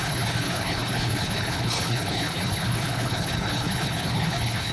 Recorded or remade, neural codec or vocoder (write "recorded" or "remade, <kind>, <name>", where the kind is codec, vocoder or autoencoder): remade, codec, HILCodec